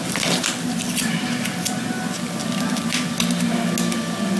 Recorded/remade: recorded